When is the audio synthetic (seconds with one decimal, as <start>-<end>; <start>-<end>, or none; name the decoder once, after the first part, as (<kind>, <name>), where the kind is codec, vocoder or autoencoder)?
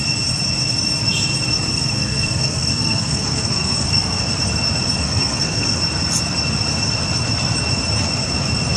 1.7-4.2 (codec, SNAC); 5.0-5.8